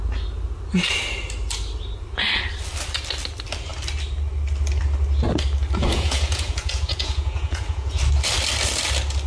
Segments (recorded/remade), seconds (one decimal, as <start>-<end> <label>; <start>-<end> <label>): 0.0-5.9 recorded; 5.9-8.0 remade; 8.0-9.3 recorded